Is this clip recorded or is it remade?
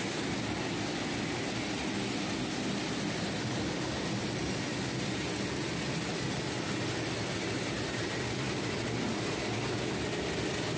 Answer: recorded